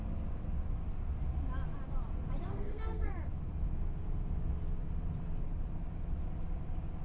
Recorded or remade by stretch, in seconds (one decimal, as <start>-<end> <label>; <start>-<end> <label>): 0.0-2.5 recorded; 2.5-3.1 remade; 3.1-7.0 recorded